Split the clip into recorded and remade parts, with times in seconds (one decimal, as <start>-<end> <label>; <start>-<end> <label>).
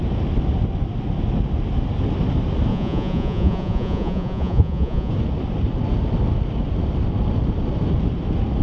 0.0-2.7 recorded; 2.7-5.1 remade; 5.1-8.6 recorded